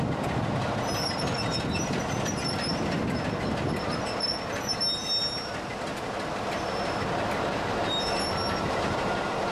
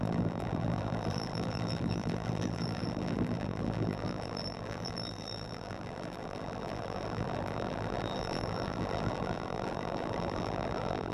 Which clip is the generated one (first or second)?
second